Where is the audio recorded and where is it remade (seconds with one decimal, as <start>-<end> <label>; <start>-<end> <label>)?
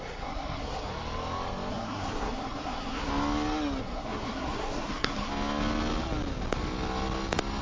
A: 0.0-0.9 remade; 0.9-1.7 recorded; 1.7-3.1 remade; 3.1-3.8 recorded; 3.8-5.3 remade; 5.3-7.6 recorded